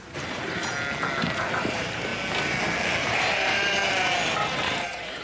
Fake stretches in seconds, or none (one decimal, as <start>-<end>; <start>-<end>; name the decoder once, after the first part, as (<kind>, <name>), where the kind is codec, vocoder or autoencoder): 0.0-0.6 (vocoder, BigVGAN v2); 1.6-2.1; 3.0-3.8; 4.6-5.2